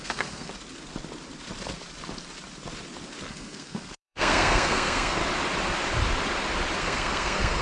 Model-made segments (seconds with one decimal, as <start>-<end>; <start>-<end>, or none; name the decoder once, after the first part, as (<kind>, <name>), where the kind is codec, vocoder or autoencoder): 0.0-0.5 (codec, SNAC); 3.3-5.2; 6.8-7.6